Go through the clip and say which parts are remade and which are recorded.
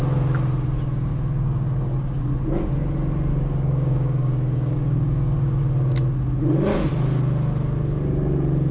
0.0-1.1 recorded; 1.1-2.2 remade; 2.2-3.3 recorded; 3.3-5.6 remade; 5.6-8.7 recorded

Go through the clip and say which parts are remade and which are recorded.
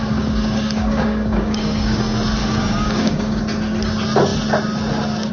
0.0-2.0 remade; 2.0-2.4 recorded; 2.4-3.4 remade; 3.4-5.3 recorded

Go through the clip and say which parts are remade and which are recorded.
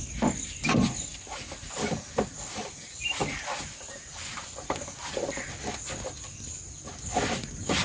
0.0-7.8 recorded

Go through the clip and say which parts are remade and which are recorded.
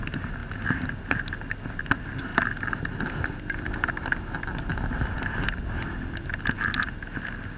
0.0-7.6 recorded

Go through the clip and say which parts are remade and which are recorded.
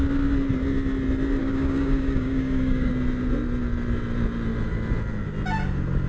0.0-1.4 recorded; 1.4-2.9 remade; 2.9-6.1 recorded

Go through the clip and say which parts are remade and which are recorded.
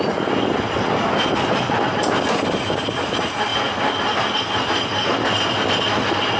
0.0-6.4 recorded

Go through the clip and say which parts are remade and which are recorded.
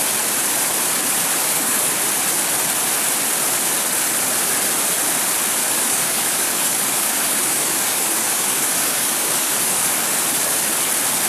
0.0-1.4 recorded; 1.4-2.0 remade; 2.0-5.6 recorded; 5.6-10.2 remade; 10.2-11.3 recorded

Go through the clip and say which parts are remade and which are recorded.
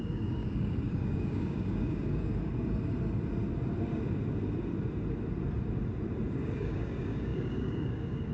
0.0-2.5 remade; 2.5-6.3 recorded; 6.3-8.3 remade